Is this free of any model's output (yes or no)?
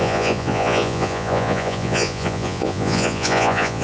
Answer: no